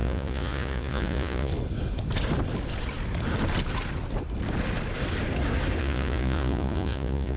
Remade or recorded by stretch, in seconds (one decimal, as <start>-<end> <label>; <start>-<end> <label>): 0.0-1.5 remade; 1.5-5.8 recorded; 5.8-7.4 remade